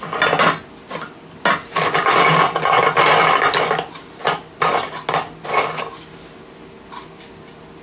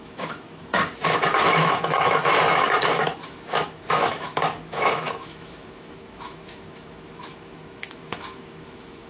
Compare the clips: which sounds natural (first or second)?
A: first